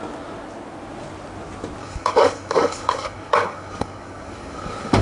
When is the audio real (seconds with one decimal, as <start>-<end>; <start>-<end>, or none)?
0.0-1.8